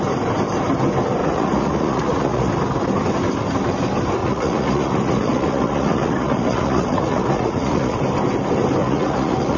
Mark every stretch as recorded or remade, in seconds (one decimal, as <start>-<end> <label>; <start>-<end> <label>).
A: 0.0-1.2 recorded; 1.2-2.5 remade; 2.5-4.2 recorded; 4.2-8.0 remade; 8.0-8.8 recorded; 8.8-9.6 remade